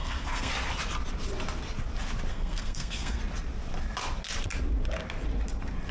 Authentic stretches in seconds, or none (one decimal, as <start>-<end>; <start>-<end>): 0.5-2.3; 3.2-5.9